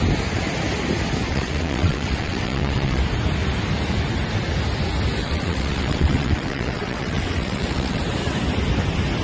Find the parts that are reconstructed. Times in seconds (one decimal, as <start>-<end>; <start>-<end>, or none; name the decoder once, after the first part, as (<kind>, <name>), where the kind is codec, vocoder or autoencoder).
1.3-3.0 (vocoder, WaveNeXt); 5.2-8.0